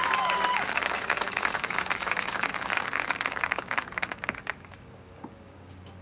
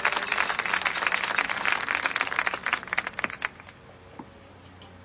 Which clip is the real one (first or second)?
second